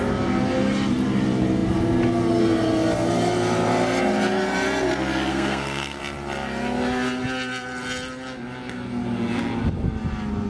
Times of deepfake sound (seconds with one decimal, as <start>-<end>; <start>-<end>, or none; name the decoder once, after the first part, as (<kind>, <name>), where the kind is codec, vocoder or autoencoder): 5.3-6.0 (codec, SNAC)